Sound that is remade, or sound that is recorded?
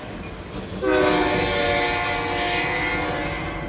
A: recorded